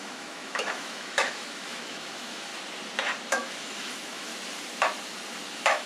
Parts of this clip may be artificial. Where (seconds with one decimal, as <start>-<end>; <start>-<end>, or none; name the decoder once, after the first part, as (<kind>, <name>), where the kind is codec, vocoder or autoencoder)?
0.0-2.5 (autoencoder, DAC-VAE); 3.3-4.3; 5.5-5.9